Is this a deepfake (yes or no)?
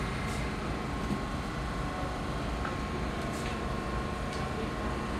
no